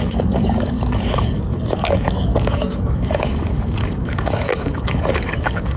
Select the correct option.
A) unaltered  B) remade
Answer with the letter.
B